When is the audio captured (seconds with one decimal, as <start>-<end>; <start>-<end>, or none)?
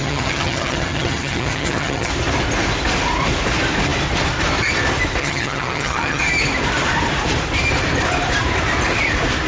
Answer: 2.1-5.2; 6.2-9.5